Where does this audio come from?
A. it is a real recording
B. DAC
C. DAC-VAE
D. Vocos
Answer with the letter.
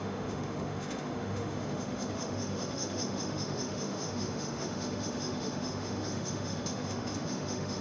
C